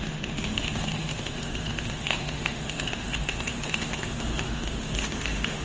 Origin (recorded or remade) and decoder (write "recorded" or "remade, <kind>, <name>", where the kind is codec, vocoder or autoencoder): remade, autoencoder, DAC-VAE